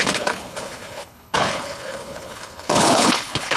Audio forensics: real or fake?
fake